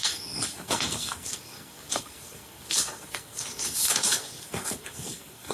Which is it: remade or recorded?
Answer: remade